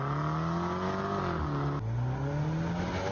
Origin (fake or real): real